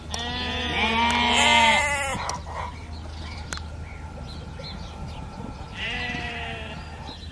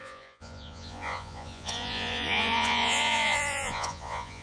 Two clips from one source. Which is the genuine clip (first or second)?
first